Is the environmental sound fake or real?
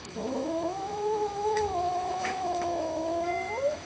fake